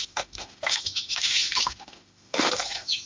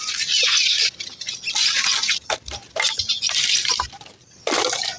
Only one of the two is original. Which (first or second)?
second